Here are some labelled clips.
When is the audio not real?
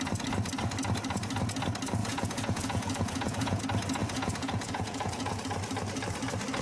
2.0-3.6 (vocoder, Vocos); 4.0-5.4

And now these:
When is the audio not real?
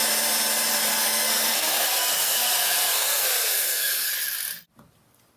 0.9-4.1 (codec, SNAC)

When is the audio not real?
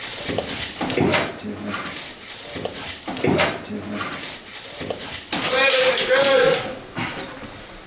none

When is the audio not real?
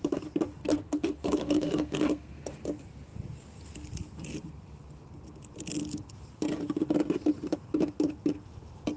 0.6-2.6 (codec, SNAC)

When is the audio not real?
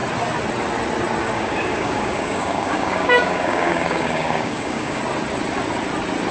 1.2-5.0 (codec, DAC)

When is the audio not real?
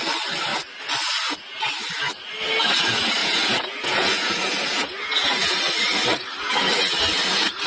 3.2-5.6 (vocoder, Vocos)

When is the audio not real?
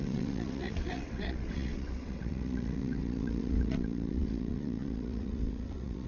0.0-6.1 (vocoder, WaveNeXt)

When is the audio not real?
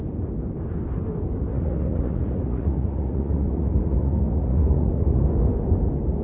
1.5-5.2 (vocoder, Vocos)